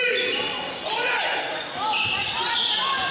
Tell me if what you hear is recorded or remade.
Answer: recorded